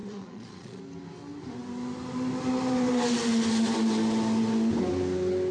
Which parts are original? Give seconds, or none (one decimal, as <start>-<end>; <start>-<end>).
0.8-5.5